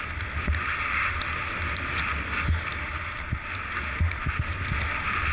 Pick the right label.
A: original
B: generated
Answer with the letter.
A